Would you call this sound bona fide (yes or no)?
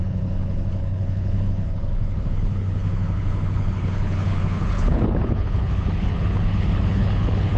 no